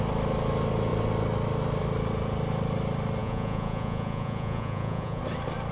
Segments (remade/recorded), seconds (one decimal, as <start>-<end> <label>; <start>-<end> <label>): 0.0-3.2 recorded; 3.2-5.2 remade; 5.2-5.7 recorded